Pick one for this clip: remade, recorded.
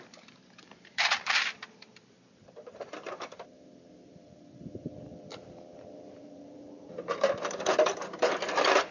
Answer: remade